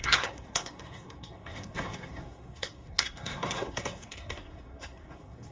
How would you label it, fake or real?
fake